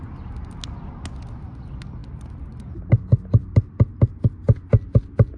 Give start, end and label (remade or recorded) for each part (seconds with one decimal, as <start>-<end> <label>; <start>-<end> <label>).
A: 0.0-5.4 recorded